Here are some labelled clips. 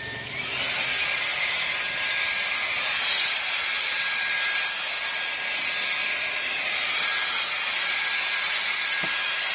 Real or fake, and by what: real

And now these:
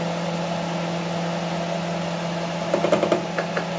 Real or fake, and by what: real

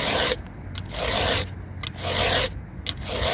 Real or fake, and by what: real